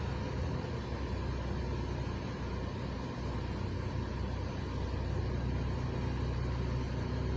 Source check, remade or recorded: recorded